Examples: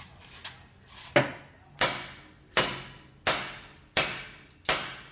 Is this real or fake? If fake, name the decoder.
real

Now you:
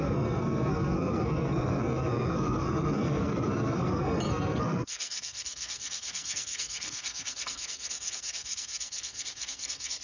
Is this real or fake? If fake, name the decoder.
fake, codec, SNAC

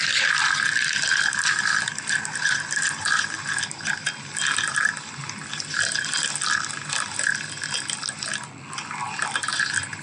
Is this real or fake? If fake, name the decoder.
real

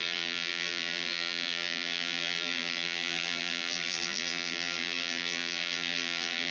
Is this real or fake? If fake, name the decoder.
fake, vocoder, BigVGAN v2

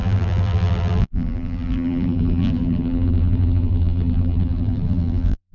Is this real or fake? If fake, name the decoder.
fake, vocoder, BigVGAN v2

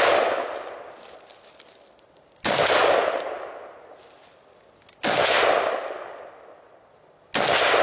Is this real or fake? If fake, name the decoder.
real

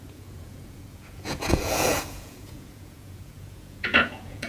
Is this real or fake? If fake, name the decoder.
fake, vocoder, Vocos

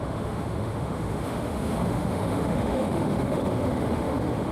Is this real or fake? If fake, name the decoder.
fake, autoencoder, DAC-VAE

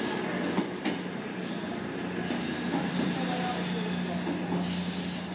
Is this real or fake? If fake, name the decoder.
real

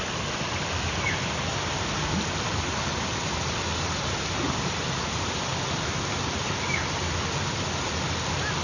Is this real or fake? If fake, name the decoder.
real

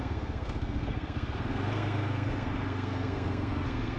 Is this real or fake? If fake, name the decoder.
fake, codec, SNAC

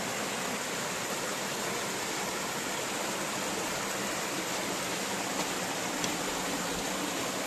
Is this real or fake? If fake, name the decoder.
real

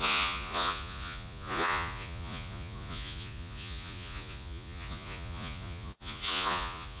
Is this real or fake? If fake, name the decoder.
fake, vocoder, Vocos